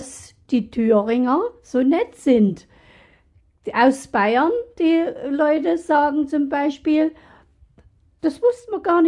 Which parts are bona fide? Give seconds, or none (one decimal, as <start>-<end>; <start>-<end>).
0.0-9.1